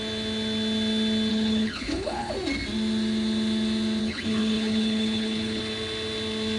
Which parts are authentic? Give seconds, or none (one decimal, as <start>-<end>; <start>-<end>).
0.0-1.3; 2.3-4.0; 5.6-6.6